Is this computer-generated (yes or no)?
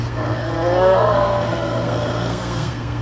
yes